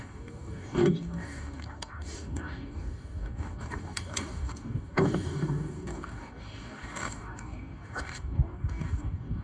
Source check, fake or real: fake